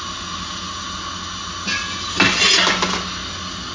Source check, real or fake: real